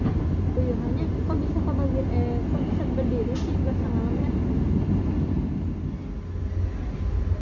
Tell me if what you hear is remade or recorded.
recorded